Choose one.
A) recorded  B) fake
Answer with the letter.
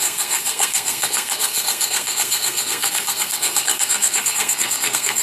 B